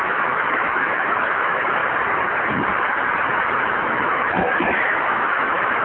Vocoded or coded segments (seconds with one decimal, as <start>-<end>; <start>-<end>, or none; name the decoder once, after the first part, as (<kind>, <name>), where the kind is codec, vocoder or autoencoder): 0.0-1.8 (autoencoder, DAC-VAE); 3.8-5.8